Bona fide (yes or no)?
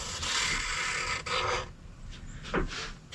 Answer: yes